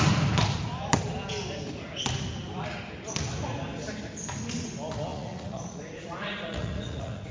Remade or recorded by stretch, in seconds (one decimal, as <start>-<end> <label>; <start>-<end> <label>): 0.0-5.1 recorded; 5.1-7.3 remade